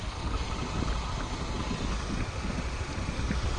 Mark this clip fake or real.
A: real